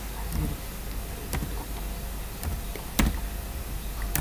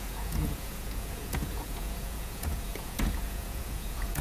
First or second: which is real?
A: first